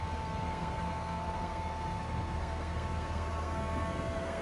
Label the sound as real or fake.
fake